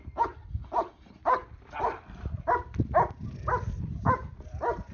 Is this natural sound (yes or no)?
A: yes